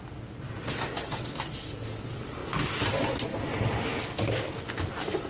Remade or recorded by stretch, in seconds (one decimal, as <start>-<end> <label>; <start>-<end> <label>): 0.0-5.3 recorded